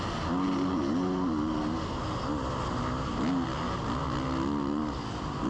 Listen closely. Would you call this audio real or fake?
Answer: real